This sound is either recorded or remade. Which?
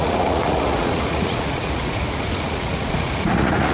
remade